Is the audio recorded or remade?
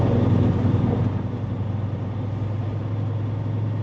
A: recorded